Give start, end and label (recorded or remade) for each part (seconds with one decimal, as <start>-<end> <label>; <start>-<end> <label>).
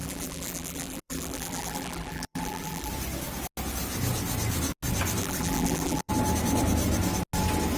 0.0-2.9 remade; 2.9-5.2 recorded; 5.2-6.1 remade; 6.1-7.8 recorded